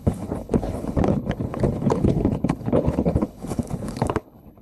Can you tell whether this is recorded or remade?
remade